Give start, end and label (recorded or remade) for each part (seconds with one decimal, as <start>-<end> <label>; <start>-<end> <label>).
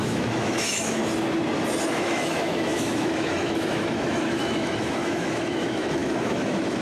0.0-1.0 remade; 1.0-1.9 recorded; 1.9-6.8 remade